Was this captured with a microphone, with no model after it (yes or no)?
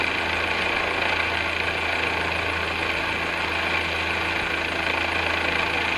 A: yes